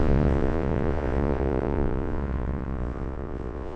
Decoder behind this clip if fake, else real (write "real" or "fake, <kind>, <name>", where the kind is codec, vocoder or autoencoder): fake, vocoder, Vocos